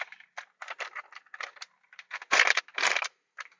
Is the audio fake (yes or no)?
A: yes